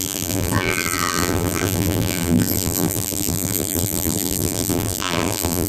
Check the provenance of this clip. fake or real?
fake